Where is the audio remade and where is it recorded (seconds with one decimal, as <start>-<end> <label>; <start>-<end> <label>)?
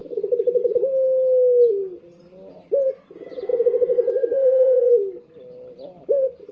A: 0.0-3.5 recorded; 3.5-4.9 remade; 4.9-6.5 recorded